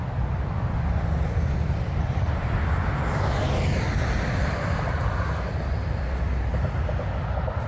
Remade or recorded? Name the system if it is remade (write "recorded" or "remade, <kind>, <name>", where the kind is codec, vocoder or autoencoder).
recorded